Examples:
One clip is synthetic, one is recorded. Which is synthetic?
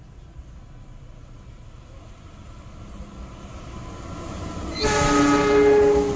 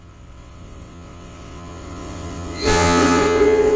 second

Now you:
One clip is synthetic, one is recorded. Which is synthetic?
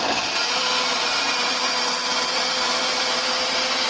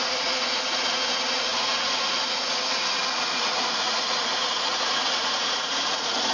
second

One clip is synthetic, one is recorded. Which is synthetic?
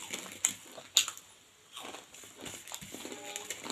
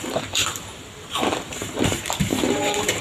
second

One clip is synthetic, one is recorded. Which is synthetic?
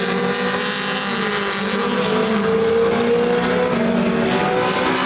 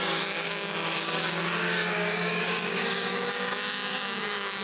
second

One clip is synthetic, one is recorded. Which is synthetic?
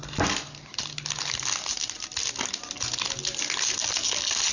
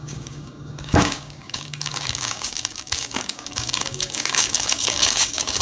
second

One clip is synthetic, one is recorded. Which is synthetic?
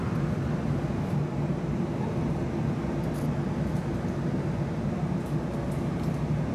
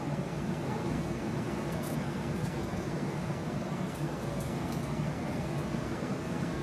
second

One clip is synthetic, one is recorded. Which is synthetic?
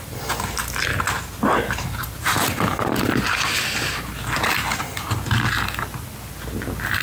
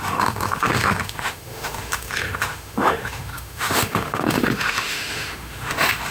second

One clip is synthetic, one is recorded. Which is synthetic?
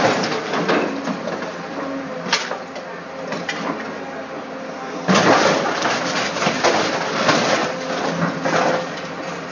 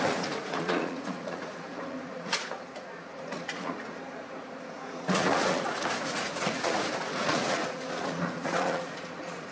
second